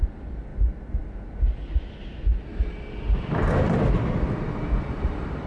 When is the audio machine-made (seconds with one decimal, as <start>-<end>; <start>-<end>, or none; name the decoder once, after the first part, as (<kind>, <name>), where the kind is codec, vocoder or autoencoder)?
0.0-0.5 (vocoder, BigVGAN v2); 3.8-5.5